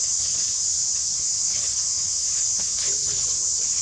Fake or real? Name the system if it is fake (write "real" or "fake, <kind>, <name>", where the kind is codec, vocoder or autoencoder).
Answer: fake, codec, HILCodec